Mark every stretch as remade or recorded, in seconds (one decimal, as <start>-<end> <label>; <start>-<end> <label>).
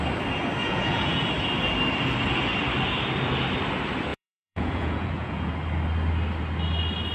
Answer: 0.0-0.6 recorded; 0.6-1.2 remade; 1.2-4.1 recorded; 4.1-5.5 remade; 5.5-7.1 recorded